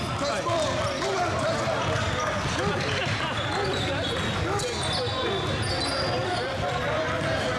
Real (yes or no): yes